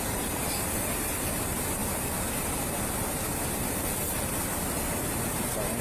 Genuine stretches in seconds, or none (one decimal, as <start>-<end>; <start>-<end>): 1.8-5.3